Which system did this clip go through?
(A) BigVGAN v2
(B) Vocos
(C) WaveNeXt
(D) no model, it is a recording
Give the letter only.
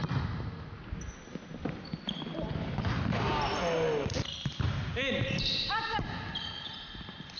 D